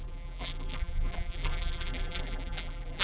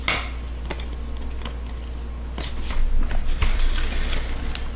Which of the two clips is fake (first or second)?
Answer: first